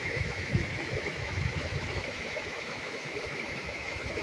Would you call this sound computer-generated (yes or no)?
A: yes